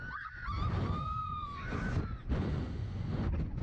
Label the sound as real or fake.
fake